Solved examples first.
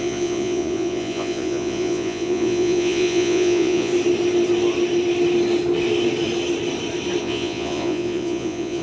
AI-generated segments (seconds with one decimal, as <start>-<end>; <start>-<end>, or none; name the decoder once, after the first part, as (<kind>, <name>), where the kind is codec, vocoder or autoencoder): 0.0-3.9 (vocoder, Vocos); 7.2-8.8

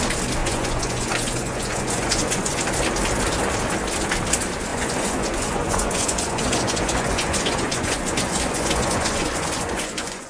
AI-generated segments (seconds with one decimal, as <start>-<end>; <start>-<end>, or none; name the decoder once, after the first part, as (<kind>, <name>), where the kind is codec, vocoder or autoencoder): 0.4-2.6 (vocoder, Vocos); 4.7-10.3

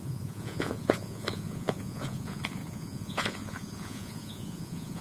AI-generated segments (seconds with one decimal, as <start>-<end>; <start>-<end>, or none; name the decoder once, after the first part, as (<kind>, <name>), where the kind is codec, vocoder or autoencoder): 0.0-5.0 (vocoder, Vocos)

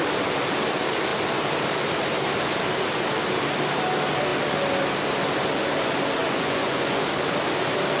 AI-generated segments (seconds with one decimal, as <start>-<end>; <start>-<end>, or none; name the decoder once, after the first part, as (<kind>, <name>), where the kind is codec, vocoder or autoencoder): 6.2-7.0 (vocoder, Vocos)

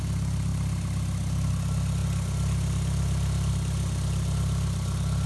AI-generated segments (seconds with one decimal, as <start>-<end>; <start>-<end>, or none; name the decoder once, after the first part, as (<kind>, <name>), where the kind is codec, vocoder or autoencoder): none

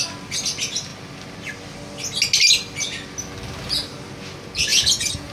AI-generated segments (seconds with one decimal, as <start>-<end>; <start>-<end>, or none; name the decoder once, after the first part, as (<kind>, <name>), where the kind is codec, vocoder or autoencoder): 4.7-5.3 (vocoder, Vocos)

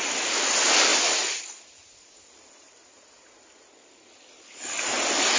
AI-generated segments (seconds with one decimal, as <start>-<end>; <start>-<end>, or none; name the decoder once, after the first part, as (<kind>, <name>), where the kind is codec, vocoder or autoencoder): none